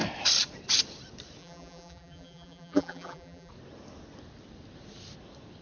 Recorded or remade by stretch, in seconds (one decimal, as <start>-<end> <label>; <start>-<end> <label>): 0.0-1.4 recorded; 1.4-3.5 remade; 3.5-5.6 recorded